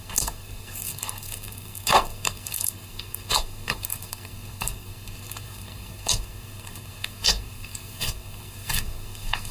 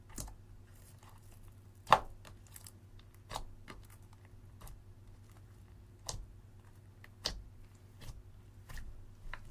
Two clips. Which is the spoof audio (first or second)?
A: first